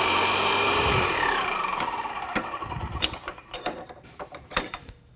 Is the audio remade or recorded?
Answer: remade